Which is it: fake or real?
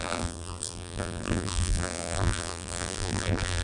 fake